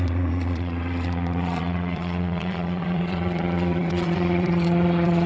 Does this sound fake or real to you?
fake